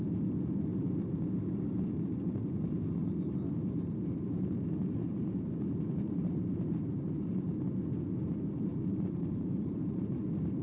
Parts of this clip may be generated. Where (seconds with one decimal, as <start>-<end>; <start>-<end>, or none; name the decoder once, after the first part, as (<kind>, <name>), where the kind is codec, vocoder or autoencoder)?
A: 0.7-2.1 (vocoder, BigVGAN v2); 3.0-7.5; 8.7-10.1